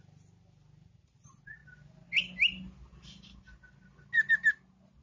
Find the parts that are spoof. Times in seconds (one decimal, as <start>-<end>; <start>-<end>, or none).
none